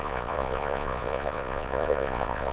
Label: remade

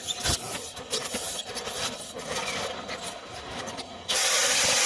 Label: recorded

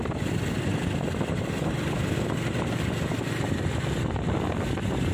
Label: recorded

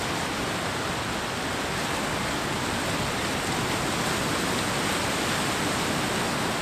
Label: recorded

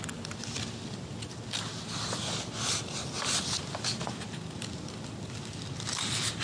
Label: recorded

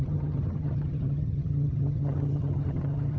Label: remade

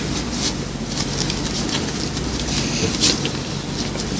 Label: recorded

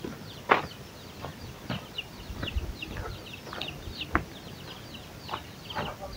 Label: recorded